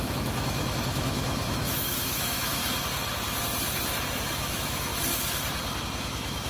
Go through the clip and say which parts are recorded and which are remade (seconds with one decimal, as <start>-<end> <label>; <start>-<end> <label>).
0.0-2.6 remade; 2.6-4.3 recorded; 4.3-4.9 remade; 4.9-5.8 recorded; 5.8-6.5 remade